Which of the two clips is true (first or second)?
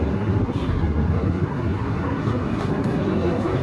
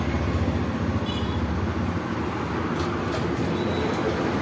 second